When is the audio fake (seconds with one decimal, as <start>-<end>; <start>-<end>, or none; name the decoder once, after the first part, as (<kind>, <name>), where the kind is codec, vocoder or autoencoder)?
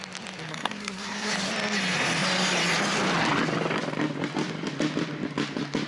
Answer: 0.5-1.3 (codec, SNAC)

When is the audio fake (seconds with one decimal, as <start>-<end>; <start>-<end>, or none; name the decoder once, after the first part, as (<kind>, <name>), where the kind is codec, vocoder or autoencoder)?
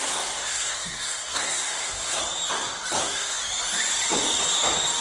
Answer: 0.0-2.2 (codec, SNAC); 3.0-3.4